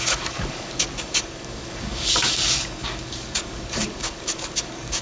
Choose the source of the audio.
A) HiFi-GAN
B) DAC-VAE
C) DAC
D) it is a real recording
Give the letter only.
C